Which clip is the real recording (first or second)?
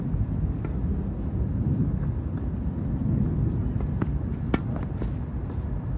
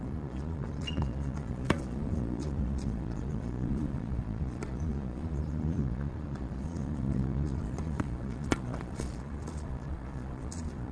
first